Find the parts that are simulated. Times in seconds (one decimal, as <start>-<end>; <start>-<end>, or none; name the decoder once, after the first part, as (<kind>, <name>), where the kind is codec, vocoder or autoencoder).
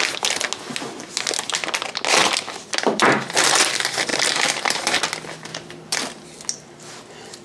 2.2-3.1 (vocoder, BigVGAN v2); 4.1-5.0; 5.5-6.0